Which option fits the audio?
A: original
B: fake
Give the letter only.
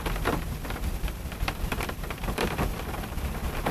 B